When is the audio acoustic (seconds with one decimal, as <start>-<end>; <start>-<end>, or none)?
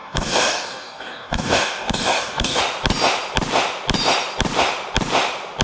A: 2.6-5.6